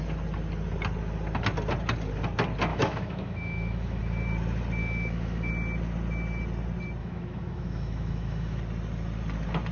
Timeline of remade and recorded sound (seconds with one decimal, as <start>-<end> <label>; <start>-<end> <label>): 0.0-2.7 recorded; 2.7-4.0 remade; 4.0-4.8 recorded; 4.8-5.5 remade; 5.5-7.0 recorded; 7.0-8.6 remade; 8.6-9.7 recorded

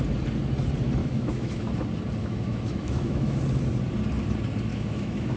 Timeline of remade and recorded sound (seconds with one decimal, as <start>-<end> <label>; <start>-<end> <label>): 0.0-1.0 recorded; 1.0-1.7 remade; 1.7-2.2 recorded; 2.2-3.4 remade; 3.4-4.7 recorded; 4.7-5.4 remade

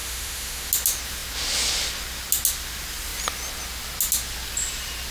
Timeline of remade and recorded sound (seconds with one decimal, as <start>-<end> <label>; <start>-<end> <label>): 0.0-0.7 remade; 0.7-5.1 recorded

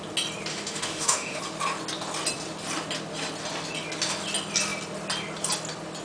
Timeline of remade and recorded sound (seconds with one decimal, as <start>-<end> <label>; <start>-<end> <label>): 0.0-0.5 recorded; 0.5-1.4 remade; 1.4-6.0 recorded

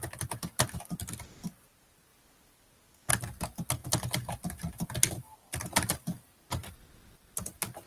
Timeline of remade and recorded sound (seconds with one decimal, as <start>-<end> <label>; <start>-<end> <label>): 0.0-7.9 recorded

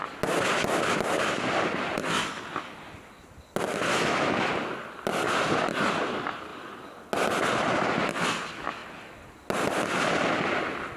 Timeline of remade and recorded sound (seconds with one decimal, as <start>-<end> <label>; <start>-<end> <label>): 0.0-3.9 recorded; 3.9-4.5 remade; 4.5-11.0 recorded